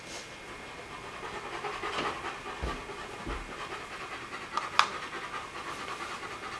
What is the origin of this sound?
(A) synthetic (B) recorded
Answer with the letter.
B